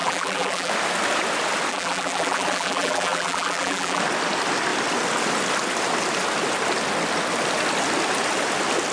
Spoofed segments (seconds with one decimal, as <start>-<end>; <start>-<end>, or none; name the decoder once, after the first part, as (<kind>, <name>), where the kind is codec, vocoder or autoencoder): 0.0-0.7 (vocoder, BigVGAN v2); 1.7-4.0